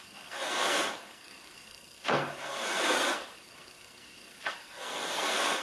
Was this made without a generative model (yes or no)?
no